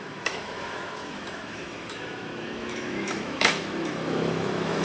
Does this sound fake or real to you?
fake